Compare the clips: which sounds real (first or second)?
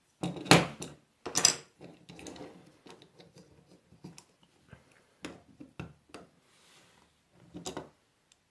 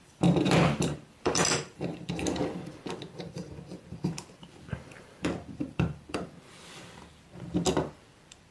first